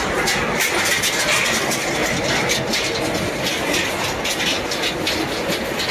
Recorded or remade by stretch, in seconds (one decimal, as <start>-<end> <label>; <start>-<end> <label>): 0.0-5.9 recorded

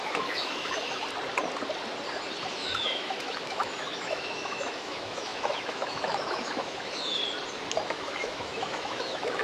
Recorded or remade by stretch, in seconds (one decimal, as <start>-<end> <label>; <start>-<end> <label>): 0.0-1.0 remade; 1.0-2.5 recorded; 2.5-7.2 remade; 7.2-7.8 recorded; 7.8-9.4 remade

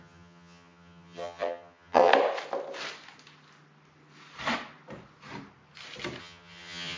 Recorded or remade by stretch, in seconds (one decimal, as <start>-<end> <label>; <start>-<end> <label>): 0.0-2.1 remade; 2.1-6.2 recorded; 6.2-7.0 remade

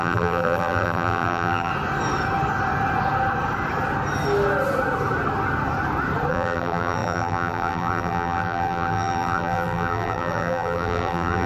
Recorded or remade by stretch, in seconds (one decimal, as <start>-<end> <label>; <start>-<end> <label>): 0.0-1.7 remade; 1.7-6.3 recorded; 6.3-11.5 remade

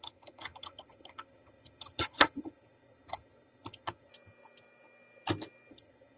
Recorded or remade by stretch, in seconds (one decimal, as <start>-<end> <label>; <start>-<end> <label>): 0.0-4.1 remade; 4.1-5.7 recorded; 5.7-6.2 remade

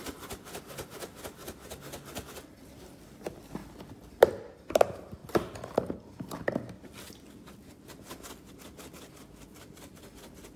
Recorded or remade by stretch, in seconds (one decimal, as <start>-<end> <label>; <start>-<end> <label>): 0.0-3.6 recorded; 3.6-4.3 remade; 4.3-10.6 recorded